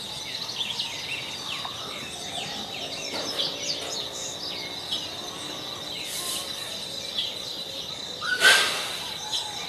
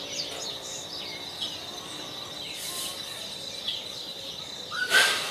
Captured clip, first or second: first